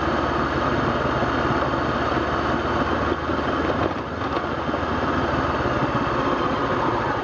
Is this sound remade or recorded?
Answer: recorded